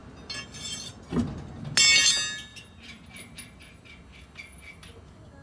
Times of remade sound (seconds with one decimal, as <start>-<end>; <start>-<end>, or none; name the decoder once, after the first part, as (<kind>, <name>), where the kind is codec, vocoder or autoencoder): 2.5-3.9 (vocoder, BigVGAN v2)